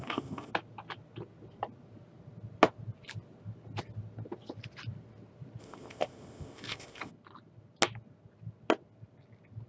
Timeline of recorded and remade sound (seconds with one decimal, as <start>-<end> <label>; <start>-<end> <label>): 0.0-0.5 remade; 0.5-5.6 recorded; 5.6-7.1 remade; 7.1-9.7 recorded